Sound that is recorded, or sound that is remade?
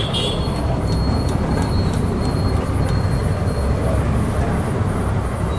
recorded